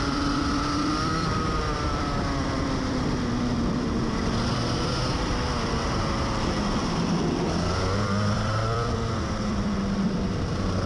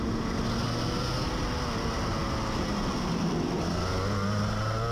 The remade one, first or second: first